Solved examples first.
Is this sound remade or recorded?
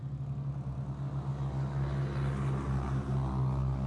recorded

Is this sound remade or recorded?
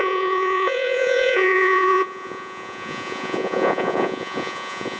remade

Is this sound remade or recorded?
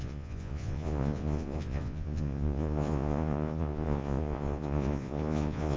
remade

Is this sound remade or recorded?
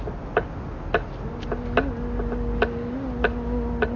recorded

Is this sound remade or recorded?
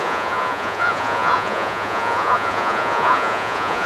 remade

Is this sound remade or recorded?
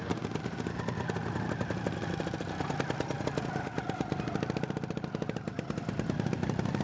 recorded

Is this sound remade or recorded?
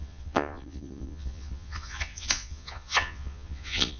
remade